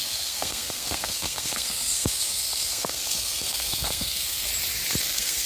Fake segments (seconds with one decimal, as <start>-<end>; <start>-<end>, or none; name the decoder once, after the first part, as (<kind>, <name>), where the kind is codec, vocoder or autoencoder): 0.0-4.5 (codec, SNAC); 5.0-5.5